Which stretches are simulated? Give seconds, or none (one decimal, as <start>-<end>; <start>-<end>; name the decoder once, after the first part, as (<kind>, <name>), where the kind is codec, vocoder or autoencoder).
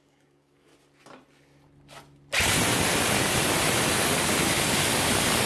0.0-0.7 (codec, DAC); 4.0-4.9